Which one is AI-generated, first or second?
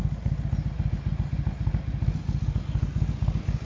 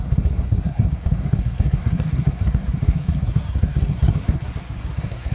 second